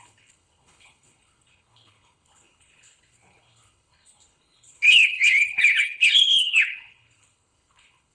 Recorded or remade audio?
remade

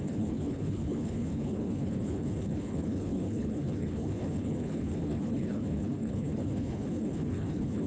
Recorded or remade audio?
remade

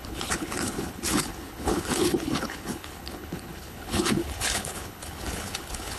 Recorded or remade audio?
remade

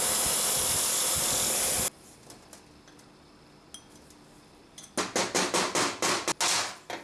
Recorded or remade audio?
recorded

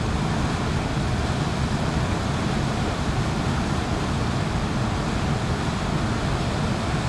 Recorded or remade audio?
recorded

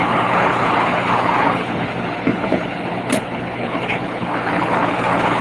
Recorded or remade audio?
remade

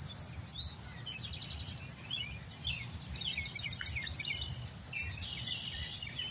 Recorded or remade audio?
recorded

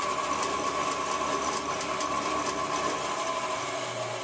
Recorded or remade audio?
recorded